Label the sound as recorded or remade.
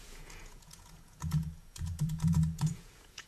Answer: remade